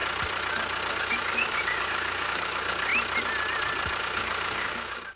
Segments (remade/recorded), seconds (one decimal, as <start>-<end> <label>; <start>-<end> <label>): 0.0-1.0 recorded; 1.0-2.9 remade; 2.9-4.0 recorded; 4.0-5.2 remade